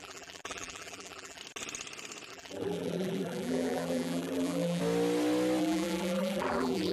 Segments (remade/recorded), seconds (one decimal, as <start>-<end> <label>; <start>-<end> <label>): 0.0-1.4 remade; 1.4-2.3 recorded; 2.3-4.8 remade; 4.8-5.6 recorded; 5.6-6.9 remade